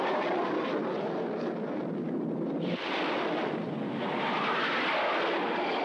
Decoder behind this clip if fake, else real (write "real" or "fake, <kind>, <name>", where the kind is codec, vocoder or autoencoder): real